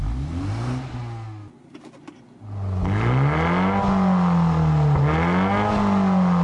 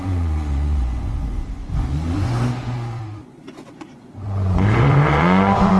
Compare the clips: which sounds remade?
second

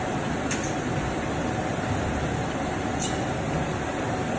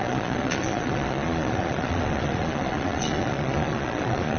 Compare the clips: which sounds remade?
second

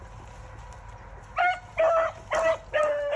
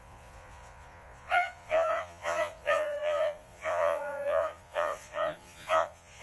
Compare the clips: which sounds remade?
second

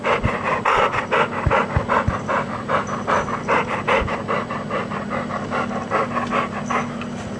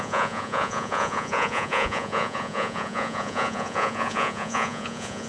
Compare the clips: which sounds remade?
second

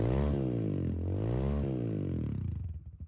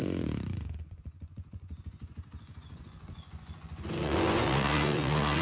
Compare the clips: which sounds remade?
second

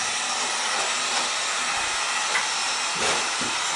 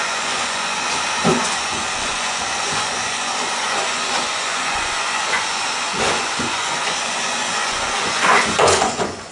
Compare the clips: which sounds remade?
second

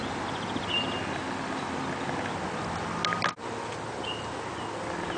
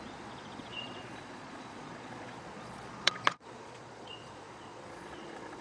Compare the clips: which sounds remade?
second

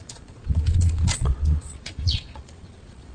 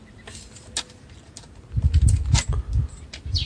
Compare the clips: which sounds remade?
first